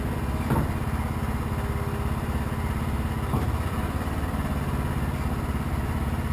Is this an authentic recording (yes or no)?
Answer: yes